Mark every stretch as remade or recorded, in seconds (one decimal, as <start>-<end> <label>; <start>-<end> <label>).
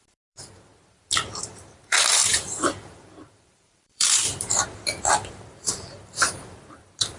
0.0-0.7 remade; 0.7-1.4 recorded; 1.4-7.2 remade